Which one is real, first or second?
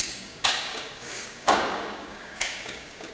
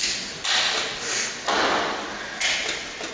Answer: second